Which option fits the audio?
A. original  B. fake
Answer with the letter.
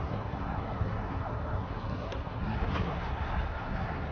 B